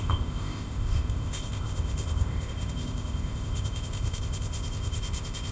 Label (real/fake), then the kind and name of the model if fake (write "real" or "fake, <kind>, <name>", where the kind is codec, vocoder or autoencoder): fake, codec, ZipCodec